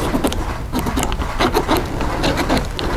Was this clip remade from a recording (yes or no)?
no